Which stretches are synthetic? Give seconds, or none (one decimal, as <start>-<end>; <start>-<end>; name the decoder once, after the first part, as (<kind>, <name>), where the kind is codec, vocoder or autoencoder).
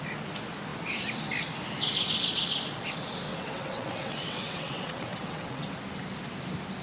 3.3-5.7 (vocoder, WaveNeXt)